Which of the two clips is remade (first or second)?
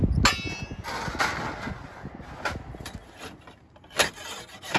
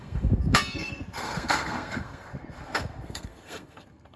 second